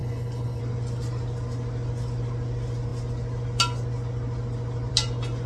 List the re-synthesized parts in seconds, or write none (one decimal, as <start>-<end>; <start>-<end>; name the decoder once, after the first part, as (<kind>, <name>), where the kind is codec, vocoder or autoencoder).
0.0-0.6 (codec, HILCodec)